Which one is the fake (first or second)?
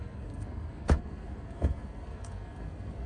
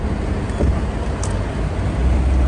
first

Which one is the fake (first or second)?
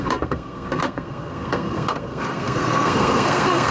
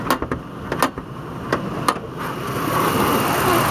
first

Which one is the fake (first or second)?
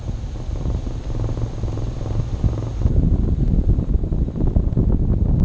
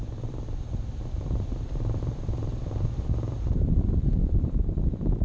second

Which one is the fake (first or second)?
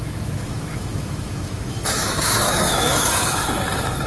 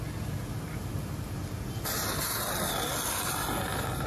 first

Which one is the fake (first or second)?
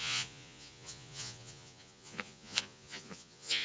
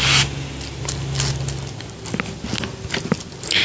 first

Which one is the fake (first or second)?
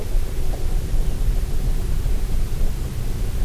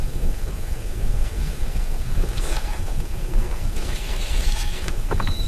second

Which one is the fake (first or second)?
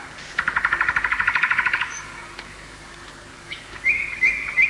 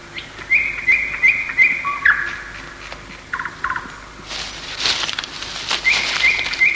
first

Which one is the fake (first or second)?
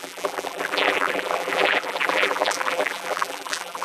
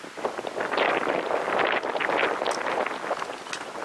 first